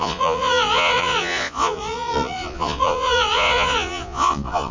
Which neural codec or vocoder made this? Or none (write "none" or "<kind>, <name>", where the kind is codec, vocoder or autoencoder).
vocoder, Vocos